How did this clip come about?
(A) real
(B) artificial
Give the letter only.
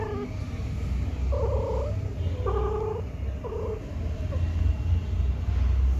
A